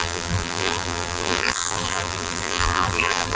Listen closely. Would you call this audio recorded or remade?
remade